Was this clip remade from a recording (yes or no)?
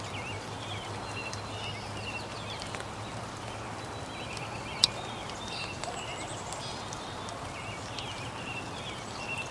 no